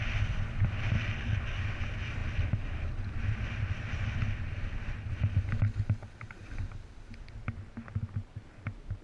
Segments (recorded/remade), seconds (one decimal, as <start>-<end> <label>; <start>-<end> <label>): 0.0-9.0 recorded